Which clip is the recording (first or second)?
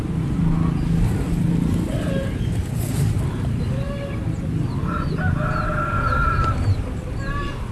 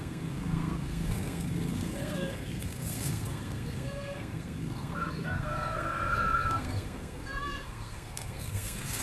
first